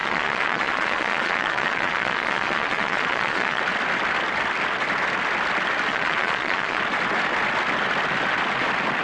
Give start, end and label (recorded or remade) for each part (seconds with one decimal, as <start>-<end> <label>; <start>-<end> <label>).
0.0-3.6 remade; 3.6-5.9 recorded; 5.9-6.8 remade; 6.8-9.0 recorded